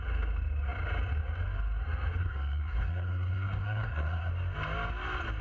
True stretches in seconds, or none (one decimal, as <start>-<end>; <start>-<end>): 0.0-2.2; 4.3-5.4